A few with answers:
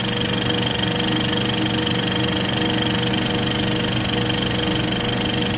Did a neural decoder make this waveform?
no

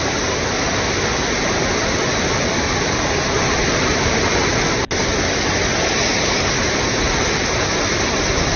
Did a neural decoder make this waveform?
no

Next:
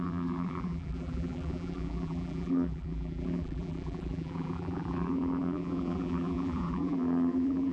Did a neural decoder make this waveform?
yes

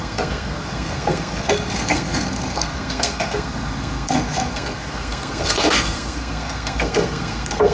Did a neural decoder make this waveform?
yes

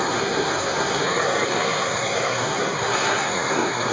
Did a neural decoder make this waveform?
yes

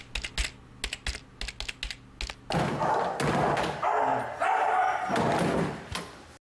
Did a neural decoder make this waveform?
no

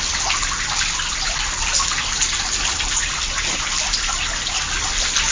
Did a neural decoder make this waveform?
no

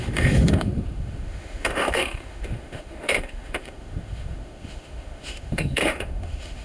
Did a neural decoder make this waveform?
yes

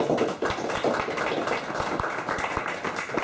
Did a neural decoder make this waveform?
no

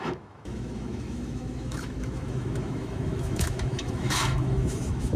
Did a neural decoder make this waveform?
yes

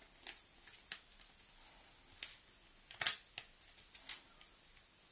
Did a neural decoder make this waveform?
no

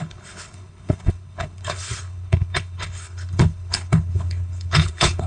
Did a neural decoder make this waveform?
yes